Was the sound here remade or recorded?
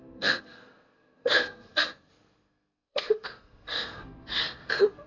remade